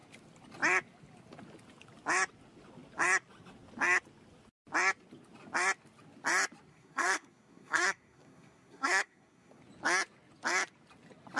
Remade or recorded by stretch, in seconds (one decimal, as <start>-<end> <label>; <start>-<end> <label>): 0.0-6.7 recorded; 6.7-9.6 remade; 9.6-11.4 recorded

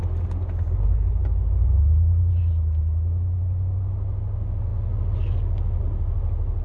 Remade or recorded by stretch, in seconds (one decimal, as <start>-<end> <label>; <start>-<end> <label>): 0.0-6.6 recorded

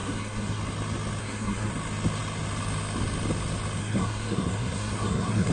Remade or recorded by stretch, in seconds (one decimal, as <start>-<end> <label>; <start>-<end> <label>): 0.0-0.6 remade; 0.6-1.2 recorded; 1.2-1.7 remade; 1.7-3.8 recorded; 3.8-5.5 remade

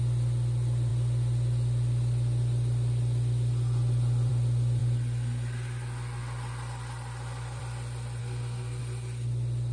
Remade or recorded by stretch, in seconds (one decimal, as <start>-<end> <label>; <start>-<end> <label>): 0.0-8.2 recorded; 8.2-8.8 remade; 8.8-9.7 recorded

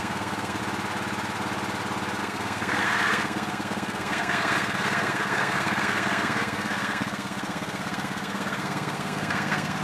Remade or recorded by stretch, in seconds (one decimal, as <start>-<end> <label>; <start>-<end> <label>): 0.0-0.6 remade; 0.6-2.2 recorded; 2.2-9.8 remade

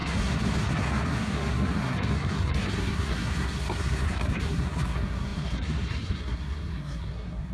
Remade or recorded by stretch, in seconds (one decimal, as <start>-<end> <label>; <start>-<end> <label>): 0.0-7.5 remade

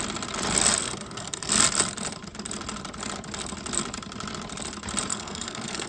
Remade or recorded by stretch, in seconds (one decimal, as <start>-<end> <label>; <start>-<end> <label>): 0.0-0.8 recorded; 0.8-1.5 remade; 1.5-5.1 recorded; 5.1-5.9 remade